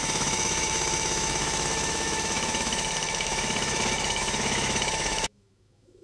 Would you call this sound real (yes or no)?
no